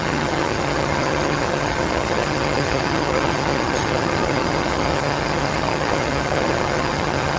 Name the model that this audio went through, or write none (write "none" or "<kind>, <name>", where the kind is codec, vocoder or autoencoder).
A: vocoder, HiFi-GAN